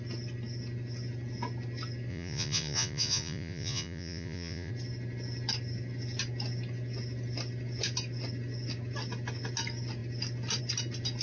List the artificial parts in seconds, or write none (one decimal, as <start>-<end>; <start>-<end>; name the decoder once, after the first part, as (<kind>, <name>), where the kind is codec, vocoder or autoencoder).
2.1-4.7 (vocoder, Vocos)